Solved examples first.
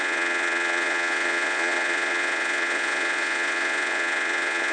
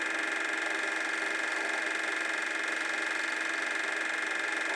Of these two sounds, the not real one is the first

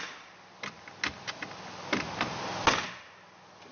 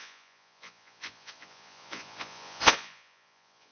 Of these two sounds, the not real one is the second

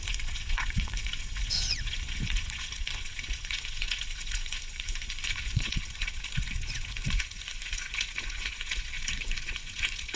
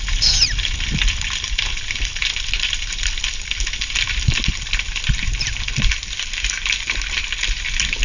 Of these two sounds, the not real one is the first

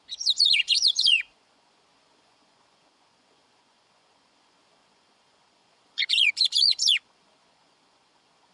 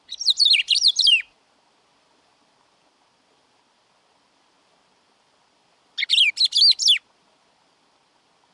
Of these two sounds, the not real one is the first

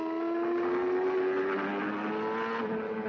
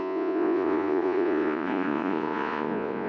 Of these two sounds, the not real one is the second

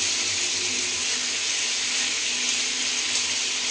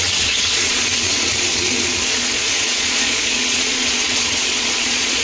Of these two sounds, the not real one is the second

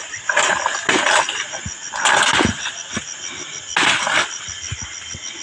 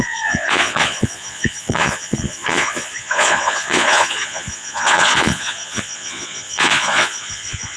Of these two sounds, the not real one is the second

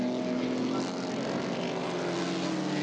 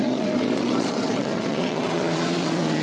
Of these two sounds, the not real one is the second